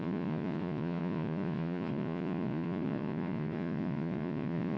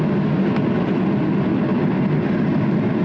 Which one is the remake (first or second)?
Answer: first